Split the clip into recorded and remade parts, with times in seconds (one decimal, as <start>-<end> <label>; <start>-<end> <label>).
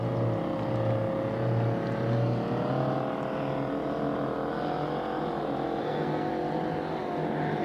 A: 0.0-5.8 recorded; 5.8-6.3 remade; 6.3-7.6 recorded